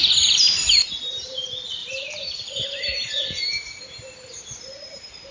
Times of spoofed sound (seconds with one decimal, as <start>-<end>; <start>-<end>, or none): 1.8-3.1